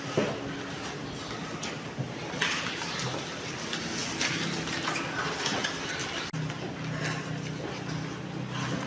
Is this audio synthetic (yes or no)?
no